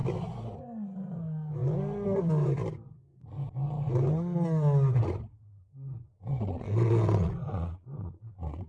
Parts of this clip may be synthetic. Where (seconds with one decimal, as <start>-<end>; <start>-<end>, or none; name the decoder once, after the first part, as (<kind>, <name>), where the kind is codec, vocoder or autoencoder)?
6.1-8.7 (vocoder, Vocos)